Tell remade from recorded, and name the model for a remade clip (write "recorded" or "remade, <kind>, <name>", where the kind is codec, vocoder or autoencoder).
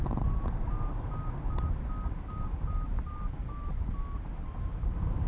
recorded